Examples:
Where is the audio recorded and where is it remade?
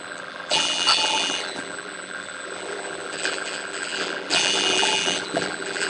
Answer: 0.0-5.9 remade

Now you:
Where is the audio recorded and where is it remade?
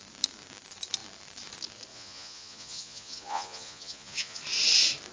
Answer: 0.0-1.9 recorded; 1.9-4.4 remade; 4.4-5.1 recorded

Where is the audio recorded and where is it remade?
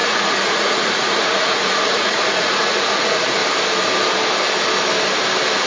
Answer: 0.0-3.4 remade; 3.4-5.7 recorded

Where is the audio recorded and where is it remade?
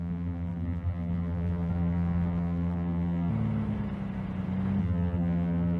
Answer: 0.0-3.3 remade; 3.3-4.8 recorded; 4.8-5.8 remade